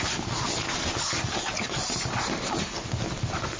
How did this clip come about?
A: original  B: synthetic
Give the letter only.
A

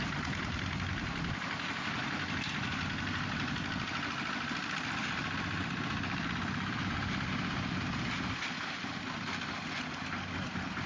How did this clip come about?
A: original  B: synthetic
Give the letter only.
A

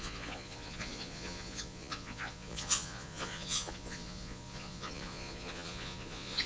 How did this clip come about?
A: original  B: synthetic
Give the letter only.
B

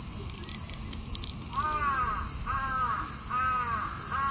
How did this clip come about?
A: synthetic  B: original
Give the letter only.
B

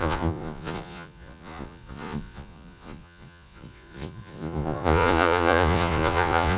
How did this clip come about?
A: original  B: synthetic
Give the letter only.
B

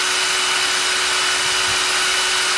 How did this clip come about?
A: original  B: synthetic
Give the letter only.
A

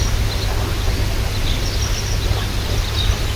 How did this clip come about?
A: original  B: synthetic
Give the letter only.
A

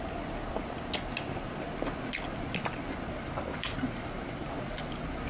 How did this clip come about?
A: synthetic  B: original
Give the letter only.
B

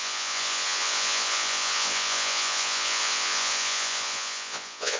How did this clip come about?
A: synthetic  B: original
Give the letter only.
A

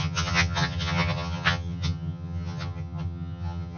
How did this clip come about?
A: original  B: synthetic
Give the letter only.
B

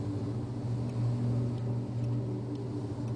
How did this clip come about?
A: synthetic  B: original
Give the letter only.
B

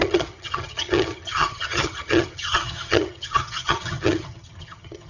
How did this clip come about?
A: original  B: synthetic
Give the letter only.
B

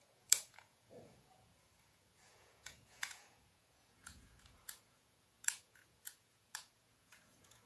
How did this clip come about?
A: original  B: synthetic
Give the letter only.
B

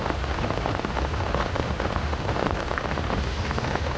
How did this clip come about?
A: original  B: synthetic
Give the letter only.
B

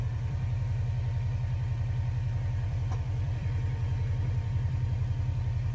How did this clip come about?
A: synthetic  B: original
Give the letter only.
A